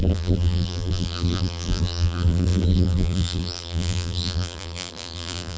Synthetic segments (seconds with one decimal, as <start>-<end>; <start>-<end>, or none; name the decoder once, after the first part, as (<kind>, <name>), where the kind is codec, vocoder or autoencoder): 0.0-5.6 (vocoder, BigVGAN v2)